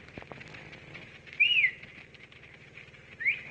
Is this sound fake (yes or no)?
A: no